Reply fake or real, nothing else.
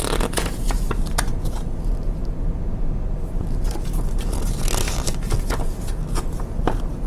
real